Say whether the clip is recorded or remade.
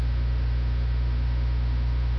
remade